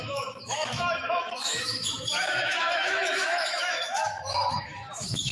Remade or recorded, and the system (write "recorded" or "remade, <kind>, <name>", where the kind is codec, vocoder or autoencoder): remade, autoencoder, DAC-VAE